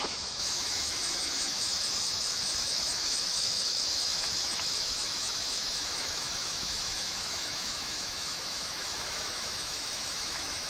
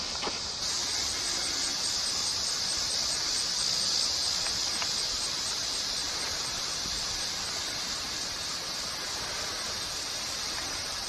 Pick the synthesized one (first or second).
first